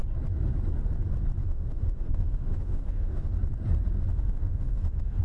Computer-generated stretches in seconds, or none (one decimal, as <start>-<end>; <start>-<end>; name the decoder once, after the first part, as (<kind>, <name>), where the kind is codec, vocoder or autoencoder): 1.4-3.3 (autoencoder, DAC-VAE); 4.1-5.2